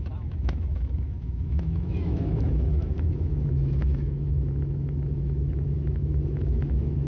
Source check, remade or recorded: remade